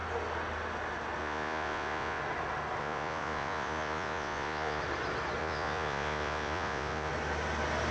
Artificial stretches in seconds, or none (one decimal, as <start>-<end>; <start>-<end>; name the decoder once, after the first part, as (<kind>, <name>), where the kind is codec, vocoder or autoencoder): 1.2-2.2 (vocoder, Vocos); 2.8-4.8; 5.4-7.1